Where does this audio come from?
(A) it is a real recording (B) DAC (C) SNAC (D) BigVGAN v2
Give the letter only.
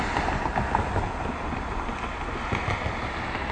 A